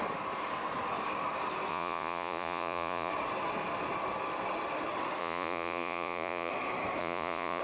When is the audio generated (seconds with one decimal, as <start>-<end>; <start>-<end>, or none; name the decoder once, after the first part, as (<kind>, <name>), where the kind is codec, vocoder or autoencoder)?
1.7-3.1 (vocoder, Vocos); 5.2-6.5; 7.0-7.6